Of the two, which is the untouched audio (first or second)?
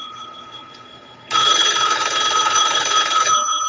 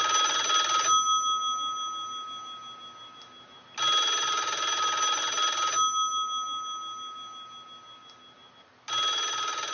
second